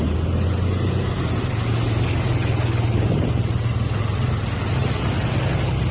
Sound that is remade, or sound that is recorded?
recorded